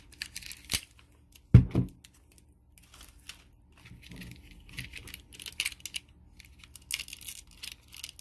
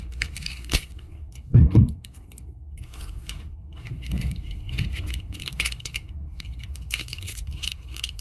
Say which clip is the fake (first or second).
second